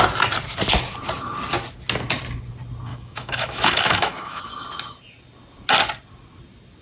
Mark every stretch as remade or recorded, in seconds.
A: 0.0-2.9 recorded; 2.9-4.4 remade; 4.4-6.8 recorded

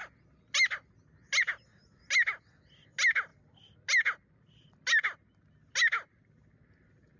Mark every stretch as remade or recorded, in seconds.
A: 0.0-7.2 recorded

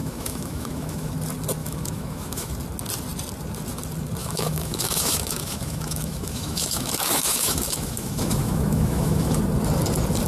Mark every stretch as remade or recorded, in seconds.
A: 0.0-1.1 remade; 1.1-1.6 recorded; 1.6-2.5 remade; 2.5-4.2 recorded; 4.2-9.4 remade; 9.4-10.3 recorded

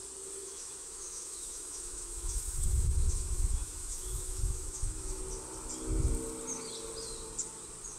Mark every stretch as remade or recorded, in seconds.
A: 0.0-0.4 recorded; 0.4-5.2 remade; 5.2-8.0 recorded

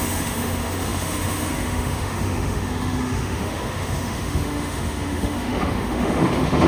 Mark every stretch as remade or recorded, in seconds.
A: 0.0-6.7 remade

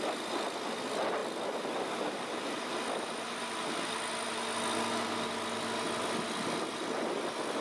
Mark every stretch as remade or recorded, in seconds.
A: 0.0-7.6 recorded

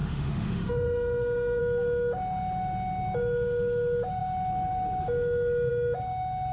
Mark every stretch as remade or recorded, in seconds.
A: 0.0-1.6 remade; 1.6-6.5 recorded

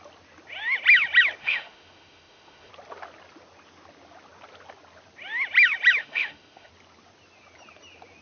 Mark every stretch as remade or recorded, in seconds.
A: 0.0-1.4 recorded; 1.4-2.7 remade; 2.7-6.0 recorded; 6.0-6.7 remade; 6.7-8.2 recorded